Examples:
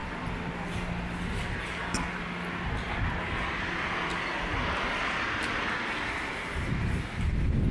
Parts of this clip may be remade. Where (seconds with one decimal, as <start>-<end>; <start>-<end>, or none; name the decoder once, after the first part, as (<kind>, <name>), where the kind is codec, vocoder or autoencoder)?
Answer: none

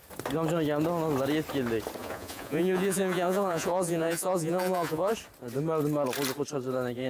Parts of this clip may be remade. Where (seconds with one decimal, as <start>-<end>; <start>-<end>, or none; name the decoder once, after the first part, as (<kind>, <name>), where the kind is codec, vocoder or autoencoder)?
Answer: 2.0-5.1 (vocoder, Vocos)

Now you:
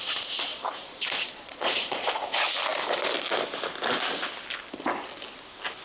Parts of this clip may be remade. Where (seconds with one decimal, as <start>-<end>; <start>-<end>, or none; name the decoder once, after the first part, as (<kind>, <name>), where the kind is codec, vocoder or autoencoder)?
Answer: 0.5-2.1 (vocoder, Vocos)

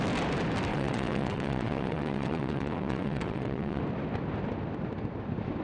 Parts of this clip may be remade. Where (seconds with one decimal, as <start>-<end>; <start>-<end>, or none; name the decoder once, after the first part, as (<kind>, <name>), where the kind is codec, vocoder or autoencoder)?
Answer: 0.7-3.8 (vocoder, WaveNeXt)

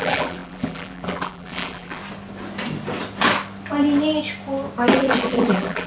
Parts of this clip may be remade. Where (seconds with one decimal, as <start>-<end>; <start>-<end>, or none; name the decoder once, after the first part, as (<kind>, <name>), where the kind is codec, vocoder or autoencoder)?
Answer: 0.0-2.0 (vocoder, BigVGAN v2); 4.9-5.9